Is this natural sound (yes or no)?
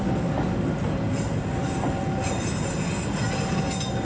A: yes